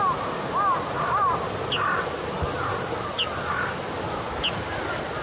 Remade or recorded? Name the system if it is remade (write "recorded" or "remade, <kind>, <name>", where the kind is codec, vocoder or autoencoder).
recorded